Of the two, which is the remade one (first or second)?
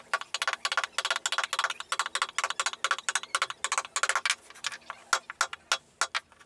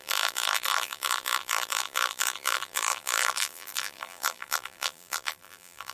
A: second